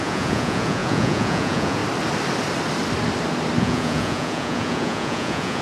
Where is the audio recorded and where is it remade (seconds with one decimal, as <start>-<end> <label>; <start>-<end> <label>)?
0.0-1.8 remade; 1.8-3.6 recorded; 3.6-5.6 remade